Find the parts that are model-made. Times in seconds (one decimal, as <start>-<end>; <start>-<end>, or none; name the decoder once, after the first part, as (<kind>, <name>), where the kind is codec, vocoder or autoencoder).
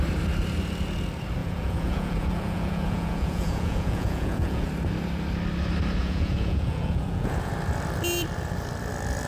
1.4-4.7 (vocoder, Vocos); 6.0-7.5